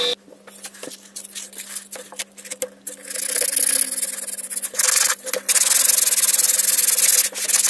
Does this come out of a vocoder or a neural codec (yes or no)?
no